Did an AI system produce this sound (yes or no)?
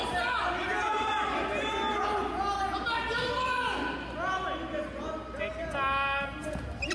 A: no